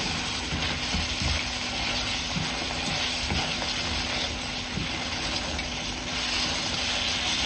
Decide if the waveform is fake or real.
real